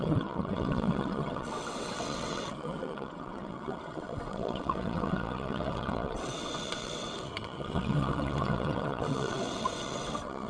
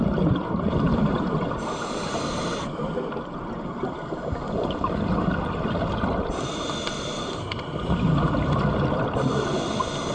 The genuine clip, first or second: second